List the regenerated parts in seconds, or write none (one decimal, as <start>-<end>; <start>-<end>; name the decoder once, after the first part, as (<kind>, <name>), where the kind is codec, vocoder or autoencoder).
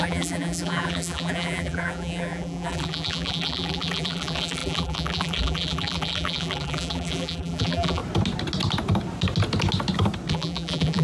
0.0-8.0 (vocoder, BigVGAN v2); 10.3-11.0